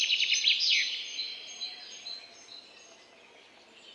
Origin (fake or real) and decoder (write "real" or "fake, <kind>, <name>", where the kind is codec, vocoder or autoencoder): real